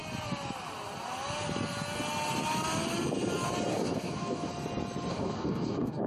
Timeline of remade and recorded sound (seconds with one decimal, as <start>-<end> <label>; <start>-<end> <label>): 0.0-3.7 recorded; 3.7-4.5 remade; 4.5-5.1 recorded; 5.1-6.1 remade